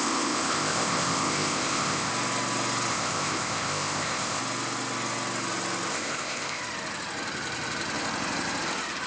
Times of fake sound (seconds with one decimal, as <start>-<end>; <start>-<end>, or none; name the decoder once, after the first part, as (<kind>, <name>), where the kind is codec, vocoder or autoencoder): 0.0-2.1 (codec, ZipCodec); 2.9-4.4; 5.9-6.6